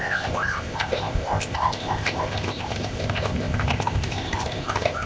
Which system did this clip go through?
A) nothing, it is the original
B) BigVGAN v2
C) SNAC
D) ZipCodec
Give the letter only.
D